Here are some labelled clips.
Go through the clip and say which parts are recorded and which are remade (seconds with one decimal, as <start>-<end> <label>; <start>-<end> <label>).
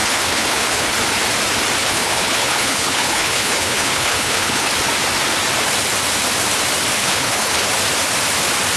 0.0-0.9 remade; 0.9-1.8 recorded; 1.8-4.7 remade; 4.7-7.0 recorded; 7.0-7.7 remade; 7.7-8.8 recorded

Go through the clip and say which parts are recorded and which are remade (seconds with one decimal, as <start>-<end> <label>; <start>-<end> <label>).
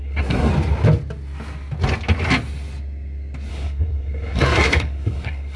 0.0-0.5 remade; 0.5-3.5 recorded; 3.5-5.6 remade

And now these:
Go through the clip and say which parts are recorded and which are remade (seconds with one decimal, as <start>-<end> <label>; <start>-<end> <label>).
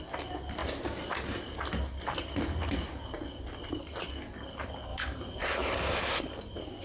0.0-6.8 recorded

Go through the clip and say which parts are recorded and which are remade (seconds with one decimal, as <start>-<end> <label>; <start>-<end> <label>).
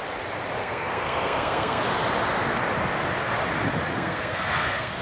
0.0-0.6 recorded; 0.6-1.8 remade; 1.8-3.9 recorded; 3.9-5.0 remade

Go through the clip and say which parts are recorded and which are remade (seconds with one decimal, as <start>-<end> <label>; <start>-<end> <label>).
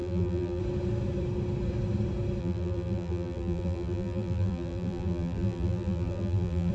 0.0-0.6 remade; 0.6-2.4 recorded; 2.4-6.7 remade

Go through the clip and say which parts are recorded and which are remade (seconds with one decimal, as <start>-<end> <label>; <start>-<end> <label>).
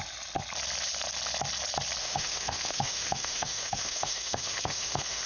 0.0-2.0 recorded; 2.0-5.3 remade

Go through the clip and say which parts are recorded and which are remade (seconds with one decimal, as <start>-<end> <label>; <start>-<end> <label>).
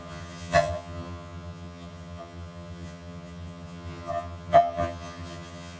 0.0-5.8 remade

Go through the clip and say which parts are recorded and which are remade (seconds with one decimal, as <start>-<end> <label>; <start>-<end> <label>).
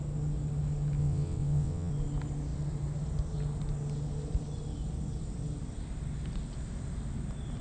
0.0-1.0 recorded; 1.0-1.9 remade; 1.9-7.6 recorded